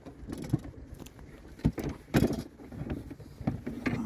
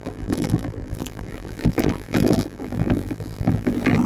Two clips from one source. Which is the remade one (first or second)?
second